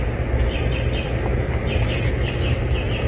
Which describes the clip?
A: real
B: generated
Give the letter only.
B